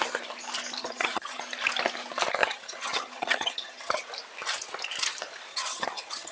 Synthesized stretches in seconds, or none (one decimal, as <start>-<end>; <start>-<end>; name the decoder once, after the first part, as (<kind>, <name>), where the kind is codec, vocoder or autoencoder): 0.8-1.4 (vocoder, HiFi-GAN); 2.4-4.0; 5.5-6.3